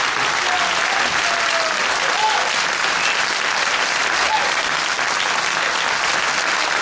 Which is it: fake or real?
real